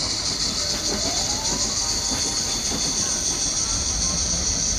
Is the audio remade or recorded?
recorded